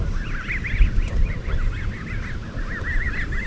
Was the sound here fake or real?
real